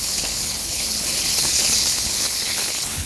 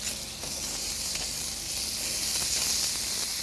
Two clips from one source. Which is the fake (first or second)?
first